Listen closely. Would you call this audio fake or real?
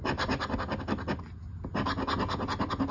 real